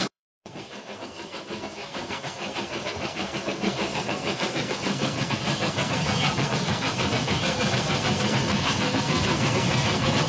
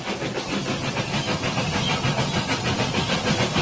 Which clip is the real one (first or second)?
second